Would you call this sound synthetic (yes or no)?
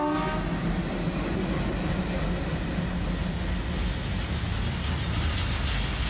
no